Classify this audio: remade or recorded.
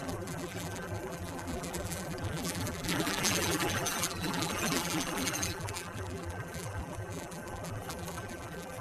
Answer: remade